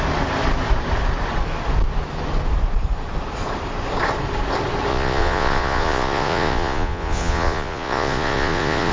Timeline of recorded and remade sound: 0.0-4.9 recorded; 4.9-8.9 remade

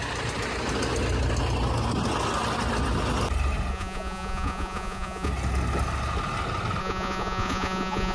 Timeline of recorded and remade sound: 0.0-3.7 recorded; 3.7-5.3 remade; 5.3-6.8 recorded; 6.8-8.1 remade

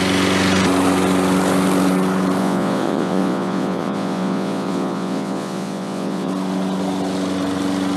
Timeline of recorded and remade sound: 0.0-2.4 recorded; 2.4-6.3 remade; 6.3-8.0 recorded

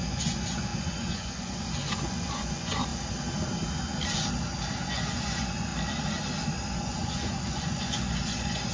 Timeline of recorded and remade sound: 0.0-2.9 remade; 2.9-4.7 recorded; 4.7-5.7 remade; 5.7-6.7 recorded; 6.7-8.7 remade

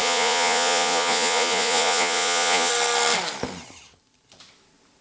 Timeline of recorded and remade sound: 0.0-2.7 remade; 2.7-5.0 recorded

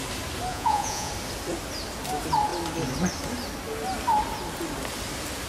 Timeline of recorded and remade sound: 0.0-0.5 recorded; 0.5-1.1 remade; 1.1-5.5 recorded